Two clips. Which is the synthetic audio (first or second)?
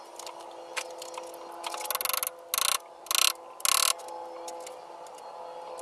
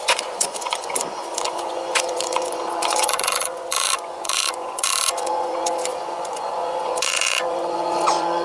second